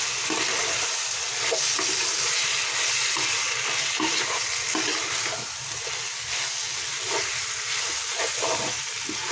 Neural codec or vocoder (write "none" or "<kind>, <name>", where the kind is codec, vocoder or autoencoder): none